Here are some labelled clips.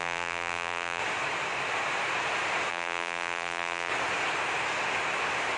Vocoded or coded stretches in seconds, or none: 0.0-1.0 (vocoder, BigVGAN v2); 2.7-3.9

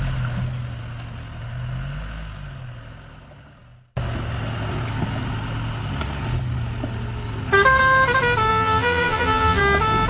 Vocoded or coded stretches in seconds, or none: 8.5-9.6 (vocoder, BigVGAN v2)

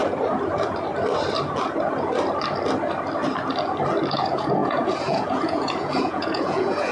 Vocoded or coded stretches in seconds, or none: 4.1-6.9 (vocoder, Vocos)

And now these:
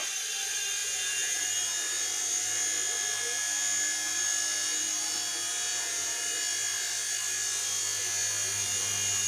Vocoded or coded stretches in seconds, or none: 0.8-1.4 (vocoder, Vocos); 5.7-6.2